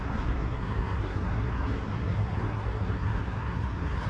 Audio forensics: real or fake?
fake